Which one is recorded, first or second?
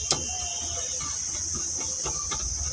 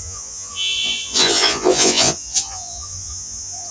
first